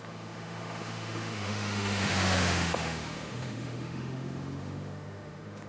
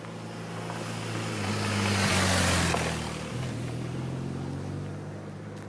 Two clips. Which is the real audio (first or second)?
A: second